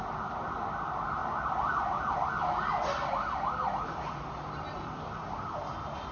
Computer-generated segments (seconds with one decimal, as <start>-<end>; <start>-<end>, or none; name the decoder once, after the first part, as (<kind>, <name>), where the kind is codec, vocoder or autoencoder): none